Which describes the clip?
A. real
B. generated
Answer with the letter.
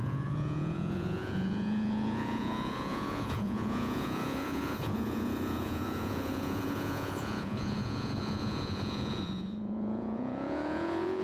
B